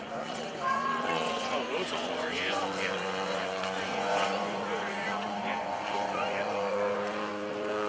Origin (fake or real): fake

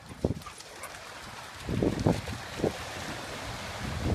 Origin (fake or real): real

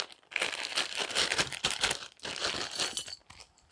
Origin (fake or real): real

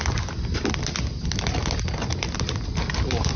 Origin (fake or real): real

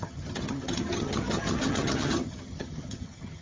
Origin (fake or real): fake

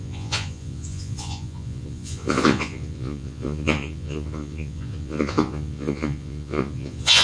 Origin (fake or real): fake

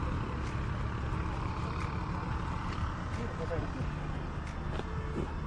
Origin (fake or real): real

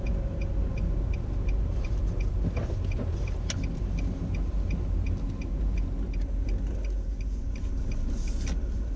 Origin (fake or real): real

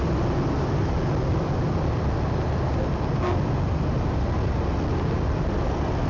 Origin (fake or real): real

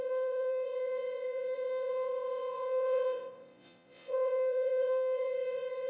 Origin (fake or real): fake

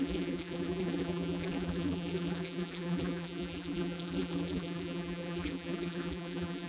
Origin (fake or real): fake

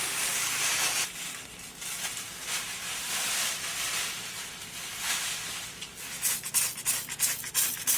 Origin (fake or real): real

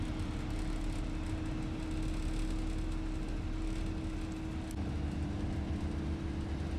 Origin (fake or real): real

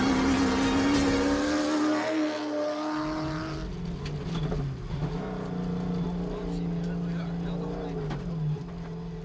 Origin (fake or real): real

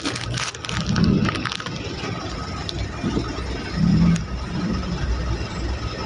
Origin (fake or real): real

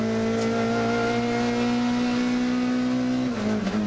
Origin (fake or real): real